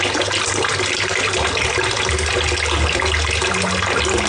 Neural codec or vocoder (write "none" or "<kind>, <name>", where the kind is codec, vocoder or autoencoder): none